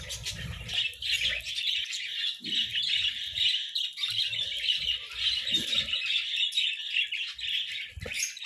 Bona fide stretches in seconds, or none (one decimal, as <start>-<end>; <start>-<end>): 0.0-2.7; 5.9-8.5